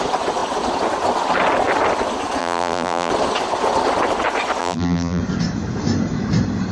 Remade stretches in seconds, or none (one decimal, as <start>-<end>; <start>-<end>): 2.4-3.1; 4.6-5.2